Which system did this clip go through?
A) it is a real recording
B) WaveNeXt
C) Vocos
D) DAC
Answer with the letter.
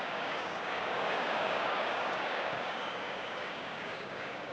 D